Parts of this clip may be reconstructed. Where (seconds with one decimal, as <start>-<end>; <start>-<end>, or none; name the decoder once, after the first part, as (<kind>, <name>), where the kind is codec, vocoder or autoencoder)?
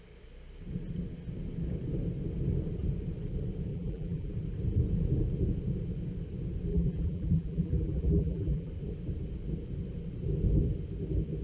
3.7-4.3 (vocoder, BigVGAN v2); 6.7-8.7